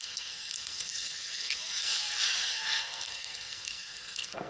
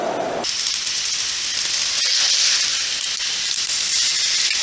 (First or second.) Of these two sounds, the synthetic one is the first